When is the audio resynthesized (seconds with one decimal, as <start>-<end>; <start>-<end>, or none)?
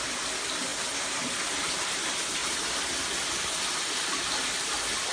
0.0-0.7; 1.7-2.4; 4.2-5.1